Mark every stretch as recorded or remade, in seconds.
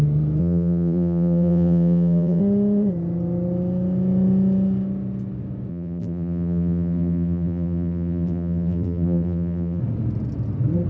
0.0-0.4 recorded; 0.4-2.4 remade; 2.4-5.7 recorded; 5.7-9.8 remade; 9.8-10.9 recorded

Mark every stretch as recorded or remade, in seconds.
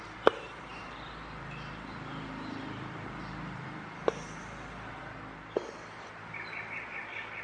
0.0-0.7 remade; 0.7-4.9 recorded; 4.9-7.4 remade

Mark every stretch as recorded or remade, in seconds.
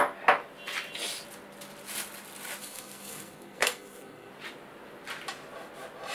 0.0-2.6 recorded; 2.6-4.3 remade; 4.3-6.1 recorded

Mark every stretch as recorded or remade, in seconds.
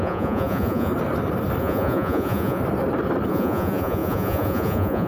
0.0-0.9 remade; 0.9-1.6 recorded; 1.6-2.6 remade; 2.6-3.3 recorded; 3.3-5.1 remade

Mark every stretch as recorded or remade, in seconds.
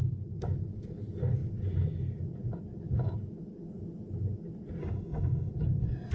0.0-4.8 recorded; 4.8-5.5 remade; 5.5-6.1 recorded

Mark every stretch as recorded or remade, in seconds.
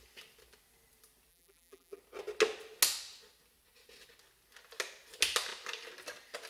0.0-1.3 recorded; 1.3-2.0 remade; 2.0-6.5 recorded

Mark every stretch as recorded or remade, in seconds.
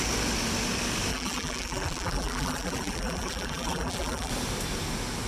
0.0-1.1 recorded; 1.1-4.3 remade; 4.3-5.3 recorded